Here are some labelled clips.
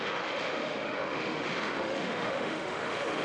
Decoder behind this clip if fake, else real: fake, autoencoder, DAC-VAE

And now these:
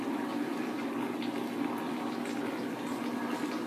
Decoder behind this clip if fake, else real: real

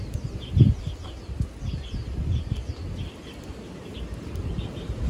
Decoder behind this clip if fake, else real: real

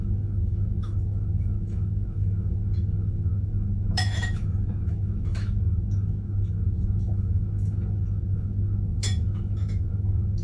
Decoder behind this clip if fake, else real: fake, autoencoder, DAC-VAE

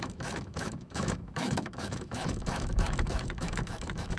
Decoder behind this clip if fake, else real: fake, autoencoder, DAC-VAE